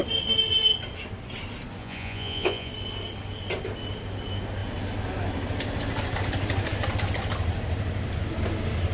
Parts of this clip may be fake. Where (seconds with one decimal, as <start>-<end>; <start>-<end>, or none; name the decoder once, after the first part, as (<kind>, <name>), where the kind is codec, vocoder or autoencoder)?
1.8-2.7 (vocoder, Vocos)